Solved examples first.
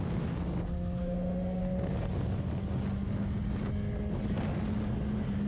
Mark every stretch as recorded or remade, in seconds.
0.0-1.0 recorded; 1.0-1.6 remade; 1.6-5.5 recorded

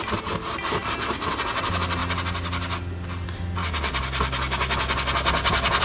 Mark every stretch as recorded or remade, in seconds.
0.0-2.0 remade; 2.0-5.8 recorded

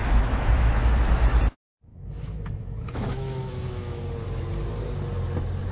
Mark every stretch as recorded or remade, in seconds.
0.0-0.8 remade; 0.8-1.9 recorded; 1.9-4.0 remade; 4.0-5.7 recorded

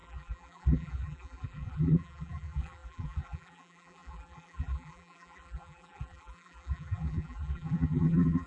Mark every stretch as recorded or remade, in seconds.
0.0-8.5 remade